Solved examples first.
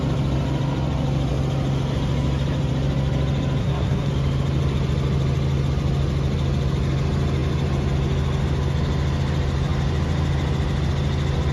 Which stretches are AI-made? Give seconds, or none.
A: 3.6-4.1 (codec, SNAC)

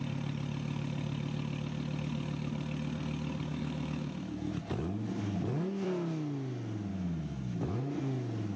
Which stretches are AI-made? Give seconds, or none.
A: 3.5-4.5 (autoencoder, DAC-VAE); 6.9-7.9

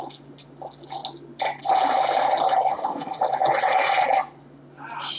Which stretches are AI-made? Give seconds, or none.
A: 2.7-3.2 (autoencoder, DAC-VAE)

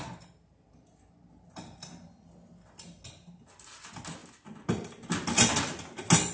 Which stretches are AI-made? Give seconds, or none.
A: none

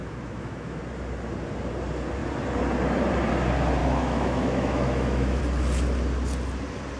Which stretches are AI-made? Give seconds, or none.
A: 0.0-0.8 (autoencoder, DAC-VAE); 3.8-5.4

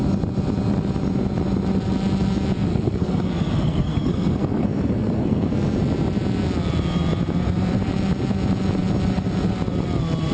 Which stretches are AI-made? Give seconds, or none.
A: 2.7-5.5 (codec, SNAC)

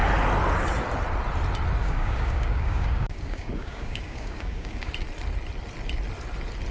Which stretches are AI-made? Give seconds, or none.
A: 1.8-4.9 (codec, DAC)